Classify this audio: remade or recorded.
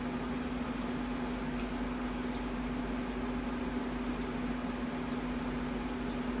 recorded